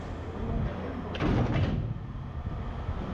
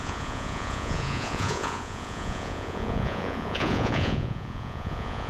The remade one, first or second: second